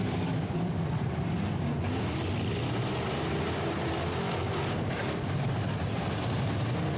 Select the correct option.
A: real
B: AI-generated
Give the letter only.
A